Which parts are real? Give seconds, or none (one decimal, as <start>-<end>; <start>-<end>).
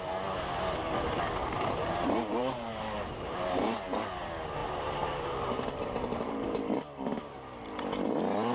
0.0-1.4; 3.5-4.6; 6.6-8.5